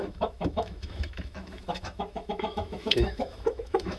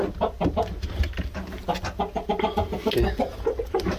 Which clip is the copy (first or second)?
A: first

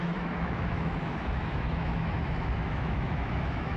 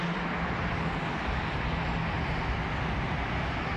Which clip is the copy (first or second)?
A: first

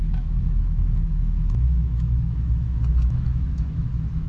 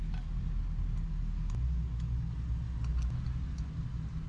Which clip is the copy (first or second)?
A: first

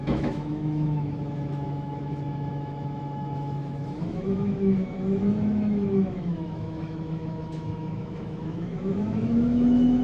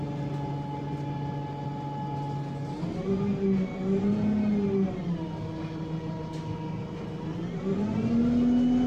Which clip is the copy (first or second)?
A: first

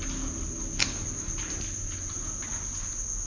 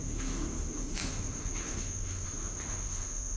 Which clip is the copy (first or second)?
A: second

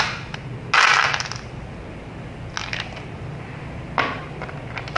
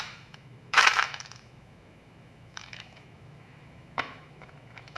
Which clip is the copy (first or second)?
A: second